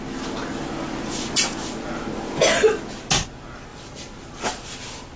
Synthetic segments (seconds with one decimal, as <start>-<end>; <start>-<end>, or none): 3.7-4.4